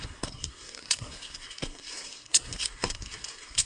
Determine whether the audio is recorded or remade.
remade